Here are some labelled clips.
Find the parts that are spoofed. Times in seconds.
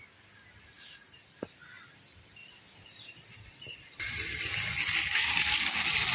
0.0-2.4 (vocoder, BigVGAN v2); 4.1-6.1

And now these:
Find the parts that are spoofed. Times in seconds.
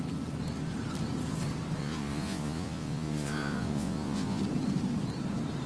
1.8-4.4 (vocoder, Vocos)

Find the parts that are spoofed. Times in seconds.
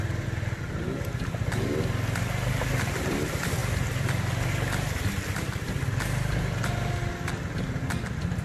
none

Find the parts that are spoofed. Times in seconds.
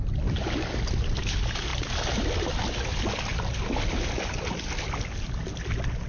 none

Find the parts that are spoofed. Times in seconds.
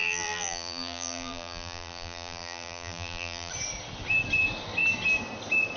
0.0-3.5 (vocoder, BigVGAN v2)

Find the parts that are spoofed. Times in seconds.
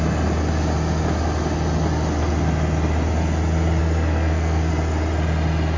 3.8-4.7 (codec, SNAC)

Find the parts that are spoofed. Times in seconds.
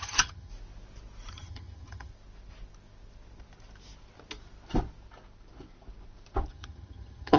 0.0-0.5 (vocoder, HiFi-GAN); 1.3-2.1; 6.5-7.4